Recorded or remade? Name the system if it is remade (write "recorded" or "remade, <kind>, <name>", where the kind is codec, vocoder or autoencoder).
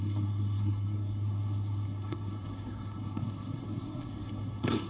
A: remade, codec, SNAC